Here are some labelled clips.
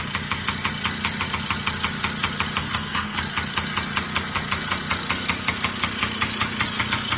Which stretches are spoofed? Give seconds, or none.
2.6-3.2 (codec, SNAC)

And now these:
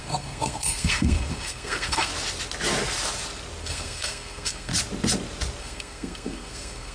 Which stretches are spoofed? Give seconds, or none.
0.0-2.1 (codec, SNAC); 3.6-4.7; 5.6-6.9